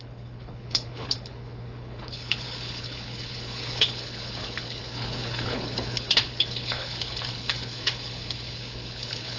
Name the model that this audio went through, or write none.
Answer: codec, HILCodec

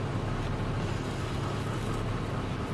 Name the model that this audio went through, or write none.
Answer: none